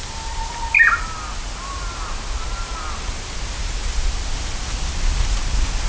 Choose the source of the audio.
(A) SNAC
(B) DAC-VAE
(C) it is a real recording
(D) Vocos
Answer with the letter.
C